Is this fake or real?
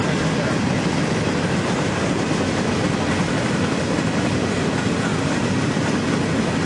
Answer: real